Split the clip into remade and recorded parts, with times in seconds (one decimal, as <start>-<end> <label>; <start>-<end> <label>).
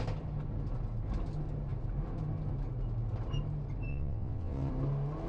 0.0-3.9 recorded; 3.9-4.7 remade; 4.7-5.3 recorded